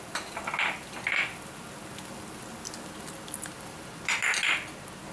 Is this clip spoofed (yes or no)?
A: no